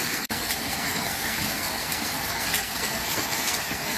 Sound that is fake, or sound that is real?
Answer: fake